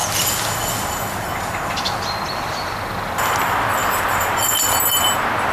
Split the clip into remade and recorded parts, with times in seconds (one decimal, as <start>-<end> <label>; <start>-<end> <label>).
0.0-5.5 recorded